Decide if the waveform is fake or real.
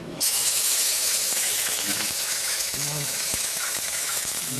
fake